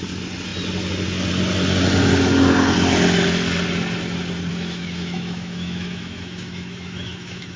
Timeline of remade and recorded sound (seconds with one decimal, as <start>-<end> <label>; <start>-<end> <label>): 0.0-4.5 recorded; 4.5-7.6 remade